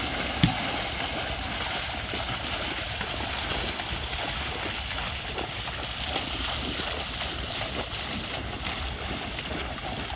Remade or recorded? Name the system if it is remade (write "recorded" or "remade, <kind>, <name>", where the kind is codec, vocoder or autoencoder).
recorded